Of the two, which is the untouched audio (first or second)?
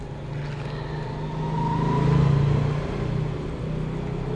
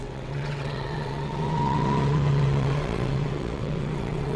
first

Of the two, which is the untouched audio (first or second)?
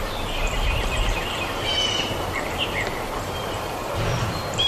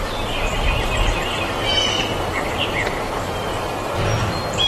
second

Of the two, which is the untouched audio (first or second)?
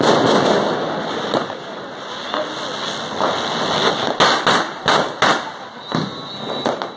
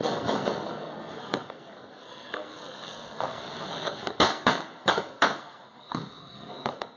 first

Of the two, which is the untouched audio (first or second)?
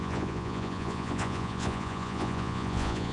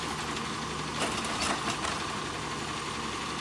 second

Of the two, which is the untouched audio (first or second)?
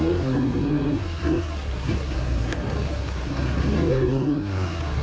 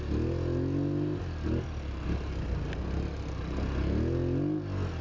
second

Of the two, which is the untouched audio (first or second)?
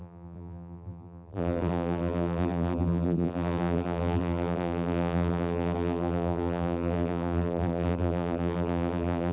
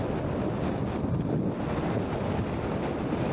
second